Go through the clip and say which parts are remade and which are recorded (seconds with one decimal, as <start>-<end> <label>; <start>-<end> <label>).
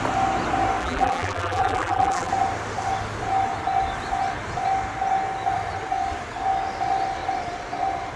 0.0-0.8 recorded; 0.8-2.3 remade; 2.3-8.2 recorded